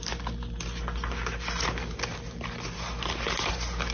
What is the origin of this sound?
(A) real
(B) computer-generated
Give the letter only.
A